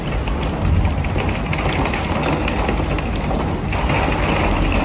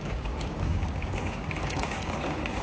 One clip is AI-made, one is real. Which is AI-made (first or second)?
second